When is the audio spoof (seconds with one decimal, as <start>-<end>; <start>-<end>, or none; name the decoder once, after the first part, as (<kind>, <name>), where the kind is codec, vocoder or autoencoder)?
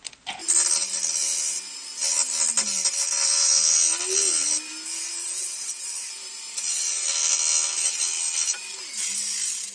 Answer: 5.2-6.1 (vocoder, WaveNeXt)